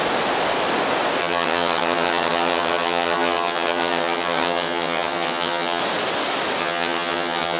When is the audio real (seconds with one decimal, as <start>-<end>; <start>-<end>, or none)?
0.0-1.2; 5.8-6.6